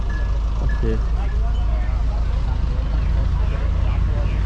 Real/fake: real